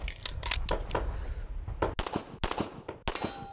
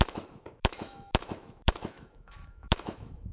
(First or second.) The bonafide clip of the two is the first